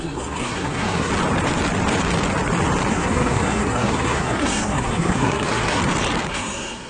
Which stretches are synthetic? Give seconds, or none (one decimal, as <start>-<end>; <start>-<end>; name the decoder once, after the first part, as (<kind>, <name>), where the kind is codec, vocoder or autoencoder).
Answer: 0.0-1.1 (codec, SNAC); 2.9-5.8; 6.3-6.9